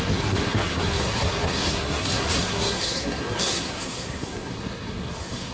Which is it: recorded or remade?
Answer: remade